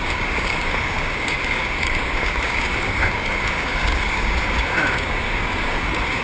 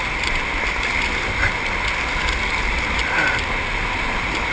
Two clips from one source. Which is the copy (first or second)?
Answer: first